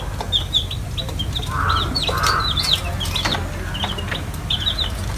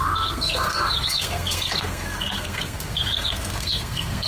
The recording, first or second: first